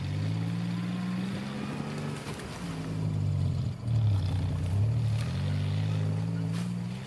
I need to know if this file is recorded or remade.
recorded